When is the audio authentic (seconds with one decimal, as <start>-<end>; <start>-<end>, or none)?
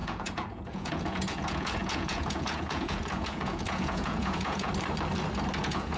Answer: 4.7-5.6